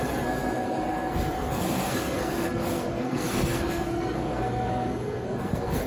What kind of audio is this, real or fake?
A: fake